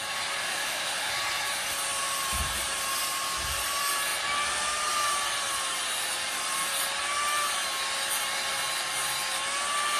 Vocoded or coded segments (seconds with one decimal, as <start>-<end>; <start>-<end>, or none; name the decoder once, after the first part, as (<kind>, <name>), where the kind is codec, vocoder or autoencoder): 0.4-1.1 (autoencoder, DAC-VAE)